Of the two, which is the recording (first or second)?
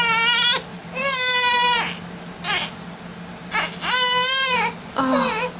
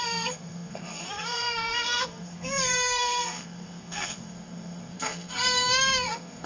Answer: first